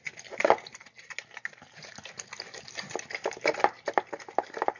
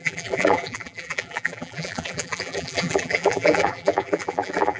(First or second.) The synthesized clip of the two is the second